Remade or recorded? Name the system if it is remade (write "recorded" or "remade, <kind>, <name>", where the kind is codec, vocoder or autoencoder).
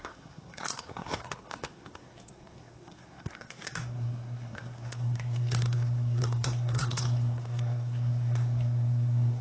remade, codec, SNAC